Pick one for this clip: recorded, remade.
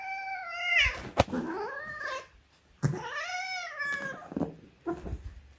recorded